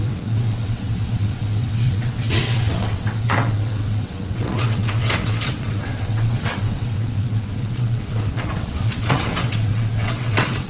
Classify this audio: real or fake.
fake